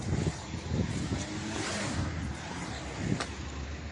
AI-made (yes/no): no